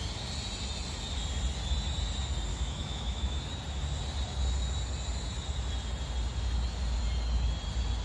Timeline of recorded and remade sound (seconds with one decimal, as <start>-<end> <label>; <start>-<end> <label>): 0.0-2.5 recorded; 2.5-3.4 remade; 3.4-8.0 recorded